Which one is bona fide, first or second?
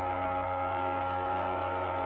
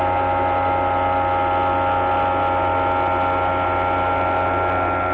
second